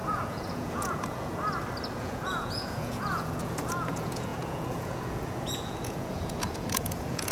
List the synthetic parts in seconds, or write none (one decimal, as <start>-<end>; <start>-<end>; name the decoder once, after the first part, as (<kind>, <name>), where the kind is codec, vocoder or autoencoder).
0.0-1.4 (vocoder, Vocos); 2.0-7.3